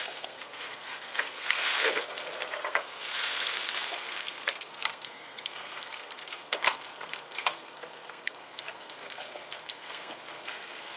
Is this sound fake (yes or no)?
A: yes